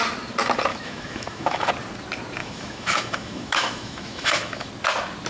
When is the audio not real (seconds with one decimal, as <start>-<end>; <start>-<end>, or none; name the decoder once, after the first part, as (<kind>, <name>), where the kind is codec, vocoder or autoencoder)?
0.7-1.7 (autoencoder, DAC-VAE); 2.4-4.7